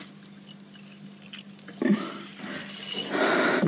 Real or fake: real